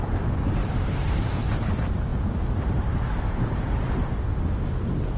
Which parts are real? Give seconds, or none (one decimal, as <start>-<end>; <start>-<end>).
0.0-0.6; 1.5-2.1; 4.1-5.2